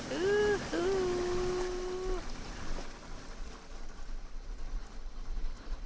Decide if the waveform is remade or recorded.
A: recorded